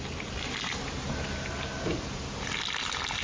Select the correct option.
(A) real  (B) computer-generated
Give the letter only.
A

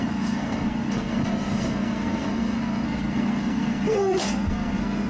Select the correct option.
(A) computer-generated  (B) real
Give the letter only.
A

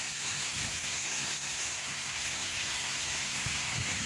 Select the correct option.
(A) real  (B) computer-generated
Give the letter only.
B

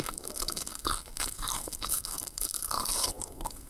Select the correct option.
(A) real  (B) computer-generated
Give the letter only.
B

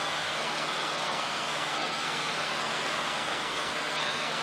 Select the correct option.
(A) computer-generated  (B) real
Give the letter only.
A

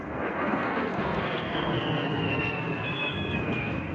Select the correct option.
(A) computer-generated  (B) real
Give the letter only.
A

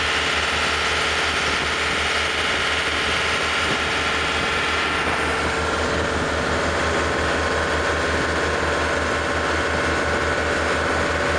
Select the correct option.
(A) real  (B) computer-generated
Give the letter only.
A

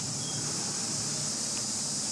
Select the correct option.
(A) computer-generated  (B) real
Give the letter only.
B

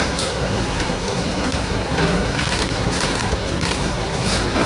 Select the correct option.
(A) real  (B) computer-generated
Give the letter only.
B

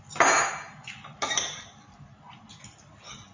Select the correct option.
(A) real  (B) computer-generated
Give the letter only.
A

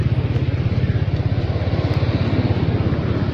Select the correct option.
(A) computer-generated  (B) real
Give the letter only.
B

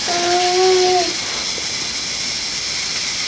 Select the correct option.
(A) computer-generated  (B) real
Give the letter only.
B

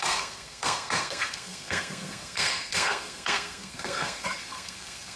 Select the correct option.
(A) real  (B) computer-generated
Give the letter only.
B